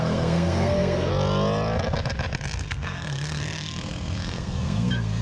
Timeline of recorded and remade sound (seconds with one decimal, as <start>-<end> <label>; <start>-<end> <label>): 0.0-1.1 remade; 1.1-2.6 recorded; 2.6-5.2 remade